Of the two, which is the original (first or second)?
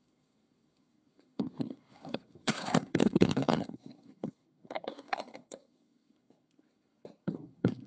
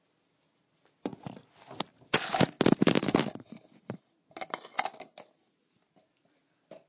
second